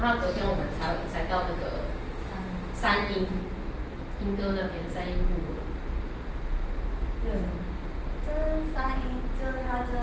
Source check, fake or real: real